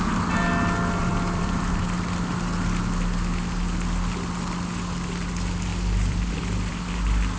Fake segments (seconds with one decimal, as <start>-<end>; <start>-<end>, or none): 1.0-1.8; 5.7-6.8